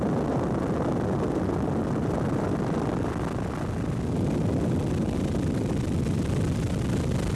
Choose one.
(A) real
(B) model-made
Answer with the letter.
A